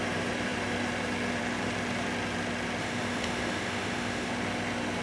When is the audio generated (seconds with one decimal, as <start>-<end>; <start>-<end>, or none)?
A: 2.8-4.3